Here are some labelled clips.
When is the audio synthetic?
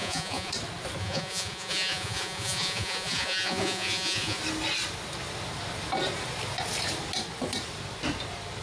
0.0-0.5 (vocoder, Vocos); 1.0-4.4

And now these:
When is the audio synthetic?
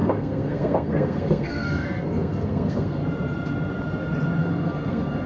0.0-3.0 (codec, SNAC); 4.4-5.3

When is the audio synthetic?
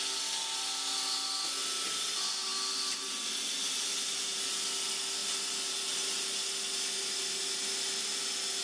none